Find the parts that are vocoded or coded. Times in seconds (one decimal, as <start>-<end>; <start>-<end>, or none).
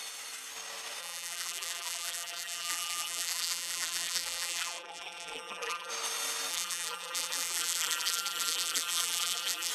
1.0-5.9; 6.5-9.7